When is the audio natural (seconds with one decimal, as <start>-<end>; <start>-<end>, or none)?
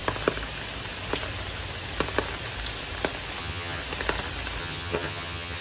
0.0-3.4; 3.8-4.6